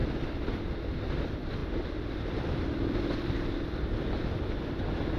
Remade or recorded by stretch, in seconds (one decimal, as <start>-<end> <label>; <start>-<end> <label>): 0.0-0.6 remade; 0.6-5.2 recorded